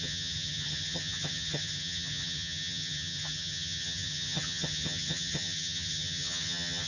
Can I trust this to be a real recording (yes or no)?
no